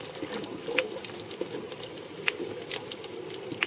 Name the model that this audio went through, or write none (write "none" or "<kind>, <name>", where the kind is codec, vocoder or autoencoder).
none